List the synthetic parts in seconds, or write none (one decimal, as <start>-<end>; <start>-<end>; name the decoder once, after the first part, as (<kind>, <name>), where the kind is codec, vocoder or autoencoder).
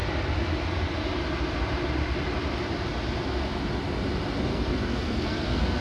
4.5-5.8 (codec, SNAC)